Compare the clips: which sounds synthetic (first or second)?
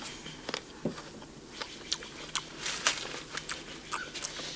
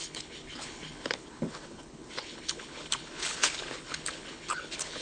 second